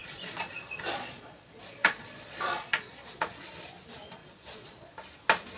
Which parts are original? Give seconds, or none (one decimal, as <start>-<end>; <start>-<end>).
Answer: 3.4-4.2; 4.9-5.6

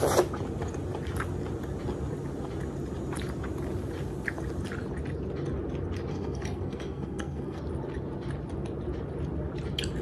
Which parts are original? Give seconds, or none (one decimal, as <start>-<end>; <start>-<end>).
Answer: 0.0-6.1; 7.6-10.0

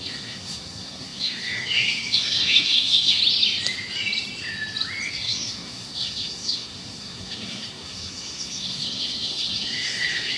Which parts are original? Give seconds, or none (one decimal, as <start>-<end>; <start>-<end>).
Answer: 3.2-5.1

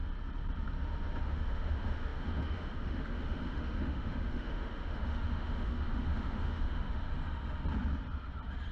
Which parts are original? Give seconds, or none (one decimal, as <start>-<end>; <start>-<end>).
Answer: 0.0-1.2; 7.1-8.7